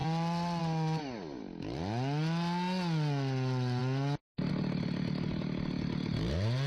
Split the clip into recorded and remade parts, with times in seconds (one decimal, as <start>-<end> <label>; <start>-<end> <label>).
0.0-0.6 remade; 0.6-6.7 recorded